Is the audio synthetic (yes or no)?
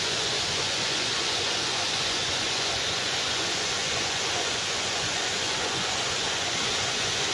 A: yes